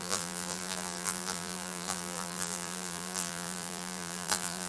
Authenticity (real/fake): fake